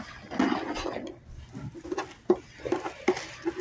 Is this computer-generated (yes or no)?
no